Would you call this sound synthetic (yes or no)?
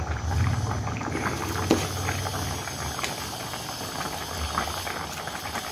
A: no